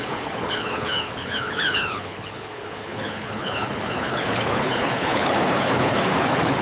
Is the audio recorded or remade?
remade